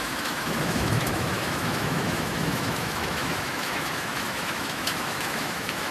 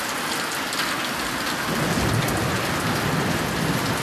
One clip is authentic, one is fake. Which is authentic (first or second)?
second